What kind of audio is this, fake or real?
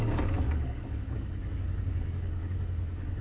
fake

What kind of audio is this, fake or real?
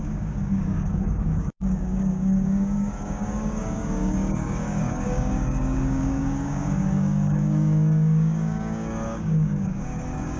fake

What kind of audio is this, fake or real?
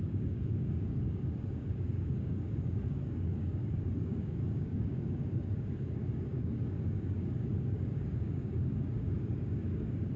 fake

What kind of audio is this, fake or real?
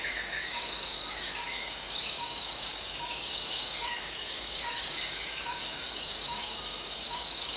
fake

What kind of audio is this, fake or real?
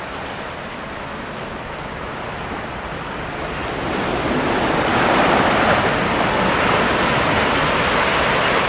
real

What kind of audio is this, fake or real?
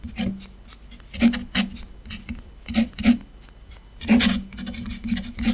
real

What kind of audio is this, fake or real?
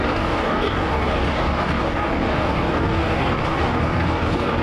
fake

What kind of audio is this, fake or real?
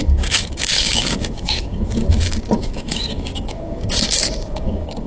fake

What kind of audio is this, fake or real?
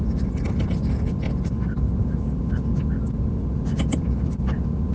real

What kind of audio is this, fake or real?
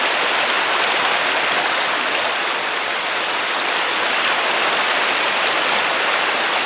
real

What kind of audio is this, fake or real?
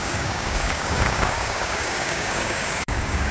fake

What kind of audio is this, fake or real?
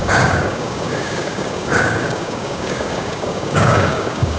fake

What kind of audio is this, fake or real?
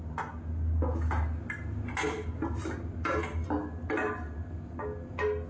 real